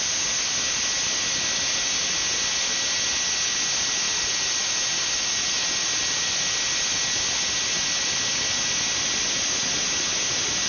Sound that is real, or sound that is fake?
real